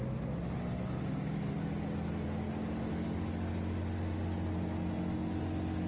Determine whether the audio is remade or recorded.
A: recorded